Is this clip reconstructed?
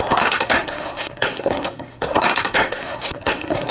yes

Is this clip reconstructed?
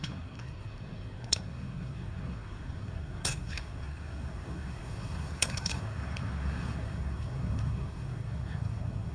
yes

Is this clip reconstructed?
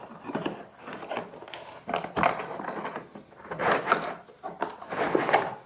no